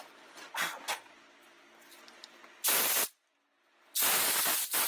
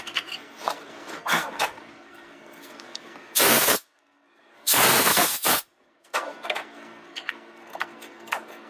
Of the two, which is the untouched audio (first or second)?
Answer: first